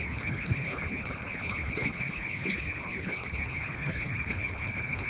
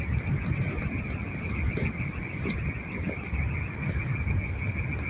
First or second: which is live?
second